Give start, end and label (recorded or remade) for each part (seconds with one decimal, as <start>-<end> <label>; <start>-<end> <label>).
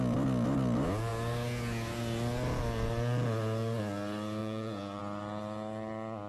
0.0-4.4 recorded; 4.4-5.0 remade; 5.0-6.3 recorded